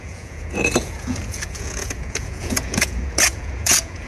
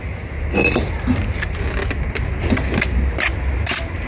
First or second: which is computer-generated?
first